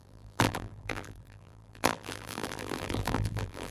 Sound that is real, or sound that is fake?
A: fake